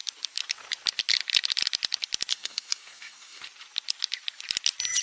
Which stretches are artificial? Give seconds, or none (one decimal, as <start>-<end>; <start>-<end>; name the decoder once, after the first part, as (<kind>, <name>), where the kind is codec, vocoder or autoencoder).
2.3-3.4 (codec, SNAC)